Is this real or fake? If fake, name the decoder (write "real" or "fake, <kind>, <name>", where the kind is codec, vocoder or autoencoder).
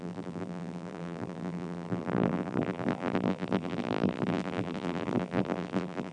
fake, vocoder, BigVGAN v2